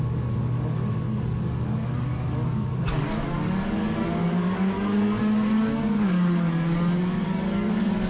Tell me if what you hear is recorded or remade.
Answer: remade